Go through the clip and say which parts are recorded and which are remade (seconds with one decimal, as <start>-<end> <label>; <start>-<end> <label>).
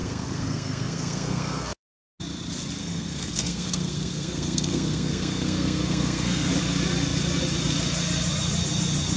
0.0-2.0 remade; 2.0-2.8 recorded; 2.8-6.5 remade; 6.5-9.2 recorded